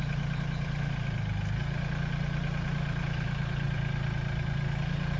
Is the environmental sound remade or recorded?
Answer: recorded